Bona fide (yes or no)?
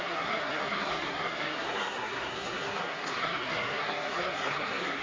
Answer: no